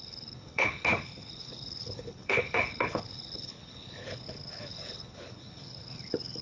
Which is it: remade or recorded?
remade